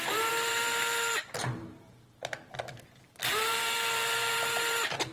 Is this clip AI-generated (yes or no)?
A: yes